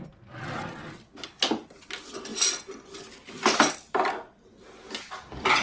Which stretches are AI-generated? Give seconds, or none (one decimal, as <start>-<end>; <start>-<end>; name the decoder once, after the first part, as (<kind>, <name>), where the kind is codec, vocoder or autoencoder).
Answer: none